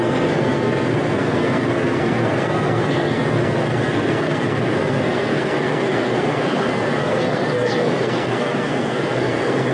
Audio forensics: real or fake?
fake